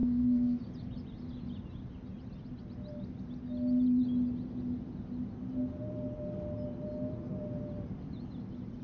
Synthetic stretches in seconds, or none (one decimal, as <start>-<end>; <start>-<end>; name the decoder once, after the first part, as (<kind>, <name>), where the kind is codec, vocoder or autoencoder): 0.0-0.6 (codec, SNAC)